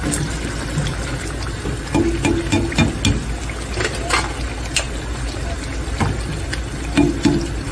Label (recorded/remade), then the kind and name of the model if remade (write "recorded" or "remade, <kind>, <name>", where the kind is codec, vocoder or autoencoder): recorded